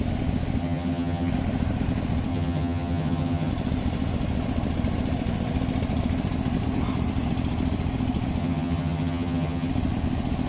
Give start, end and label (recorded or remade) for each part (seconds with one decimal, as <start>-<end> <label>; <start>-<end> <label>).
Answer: 0.0-0.6 recorded; 0.6-1.3 remade; 1.3-2.3 recorded; 2.3-3.5 remade; 3.5-8.4 recorded; 8.4-9.7 remade; 9.7-10.5 recorded